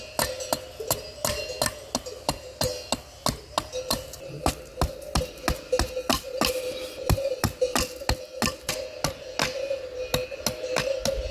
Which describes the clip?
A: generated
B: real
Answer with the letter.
B